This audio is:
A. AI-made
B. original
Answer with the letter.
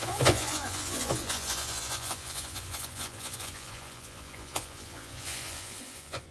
A